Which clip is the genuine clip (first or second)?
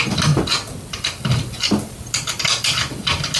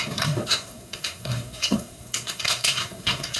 first